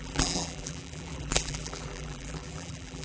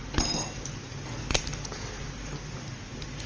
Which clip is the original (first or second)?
second